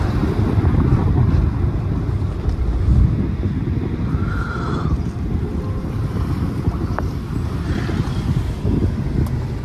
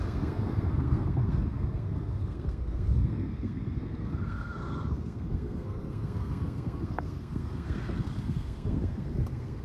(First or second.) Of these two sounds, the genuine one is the first